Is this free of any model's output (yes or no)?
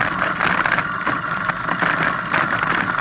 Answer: yes